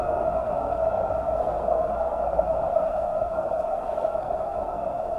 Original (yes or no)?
no